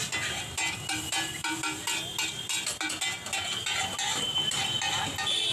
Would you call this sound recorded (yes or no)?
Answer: yes